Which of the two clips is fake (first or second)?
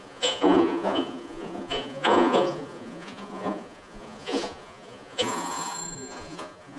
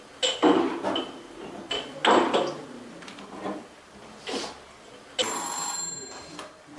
first